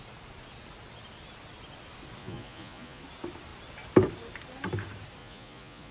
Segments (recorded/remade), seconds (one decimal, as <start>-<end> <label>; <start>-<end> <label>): 0.0-2.2 recorded; 2.2-3.0 remade; 3.0-5.2 recorded; 5.2-5.9 remade